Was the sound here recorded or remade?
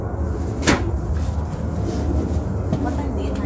recorded